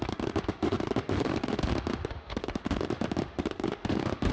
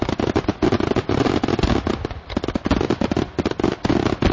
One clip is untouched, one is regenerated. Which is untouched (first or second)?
second